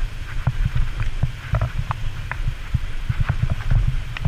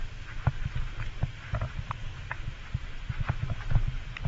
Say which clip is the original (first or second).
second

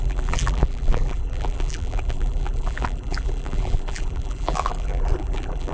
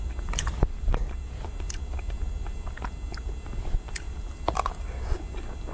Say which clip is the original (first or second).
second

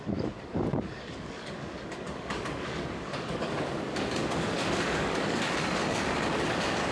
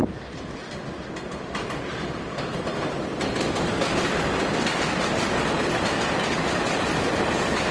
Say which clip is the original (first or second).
second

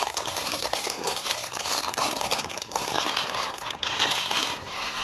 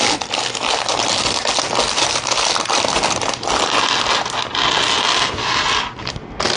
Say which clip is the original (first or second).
second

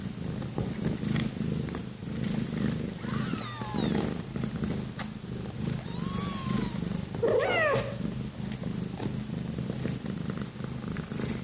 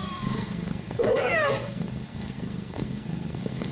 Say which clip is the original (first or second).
first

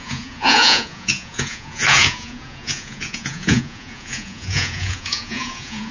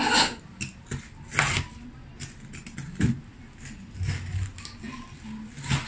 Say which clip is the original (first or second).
second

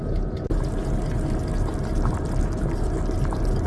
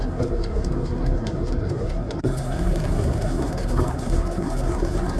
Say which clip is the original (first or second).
first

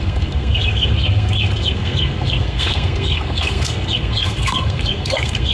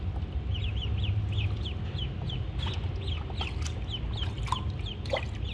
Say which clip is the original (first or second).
second